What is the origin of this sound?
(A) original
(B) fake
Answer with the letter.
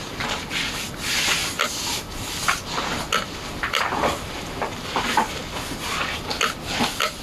A